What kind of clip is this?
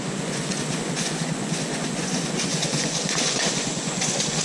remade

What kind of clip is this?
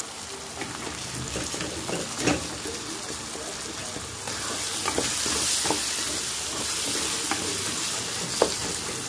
recorded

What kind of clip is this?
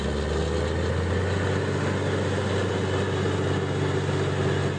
recorded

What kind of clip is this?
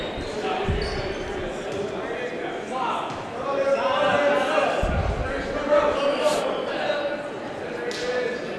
recorded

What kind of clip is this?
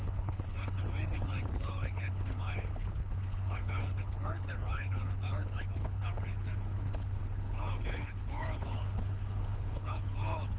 remade